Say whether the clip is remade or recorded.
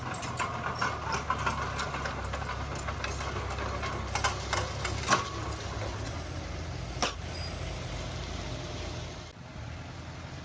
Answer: recorded